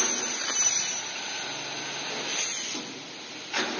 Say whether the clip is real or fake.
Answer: real